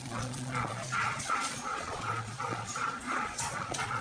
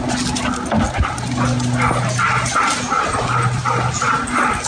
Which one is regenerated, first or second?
first